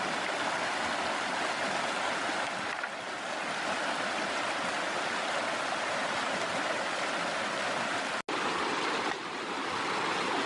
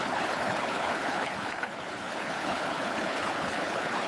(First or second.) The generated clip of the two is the second